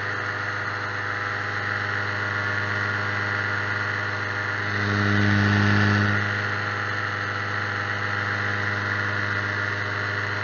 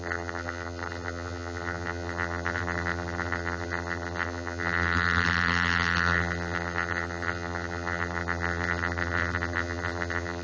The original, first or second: first